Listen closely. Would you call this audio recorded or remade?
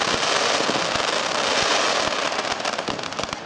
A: recorded